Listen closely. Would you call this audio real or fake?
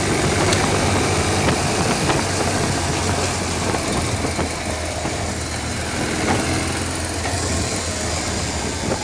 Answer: real